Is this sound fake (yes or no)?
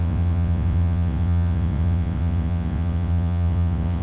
yes